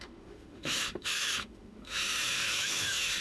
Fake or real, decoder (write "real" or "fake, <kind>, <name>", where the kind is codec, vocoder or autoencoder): fake, autoencoder, DAC-VAE